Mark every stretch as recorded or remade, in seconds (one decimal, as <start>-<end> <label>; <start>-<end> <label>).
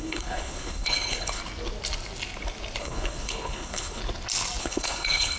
0.0-1.4 remade; 1.4-2.8 recorded; 2.8-4.0 remade; 4.0-4.6 recorded; 4.6-5.4 remade